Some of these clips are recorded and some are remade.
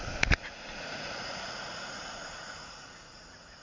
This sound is remade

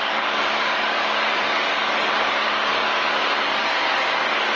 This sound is remade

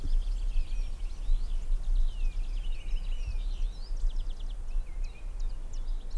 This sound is recorded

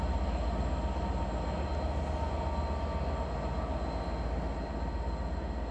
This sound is recorded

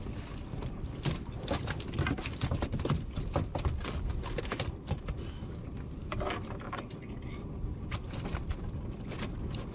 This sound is recorded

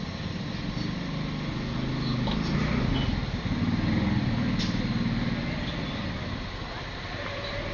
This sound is recorded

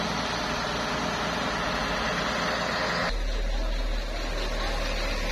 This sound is recorded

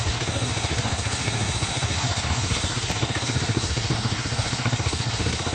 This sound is remade